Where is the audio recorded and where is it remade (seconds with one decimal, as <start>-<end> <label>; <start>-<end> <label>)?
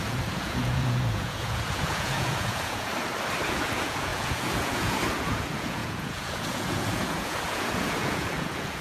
0.0-2.9 remade; 2.9-3.4 recorded; 3.4-8.8 remade